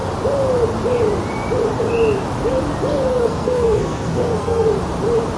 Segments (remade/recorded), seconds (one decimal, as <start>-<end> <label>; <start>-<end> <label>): 0.0-3.1 recorded; 3.1-4.7 remade; 4.7-5.4 recorded